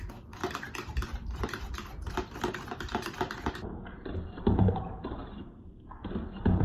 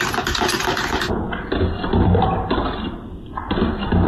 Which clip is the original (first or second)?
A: second